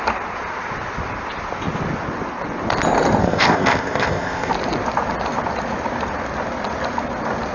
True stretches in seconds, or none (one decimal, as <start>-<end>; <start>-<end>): 0.0-3.2; 4.5-7.5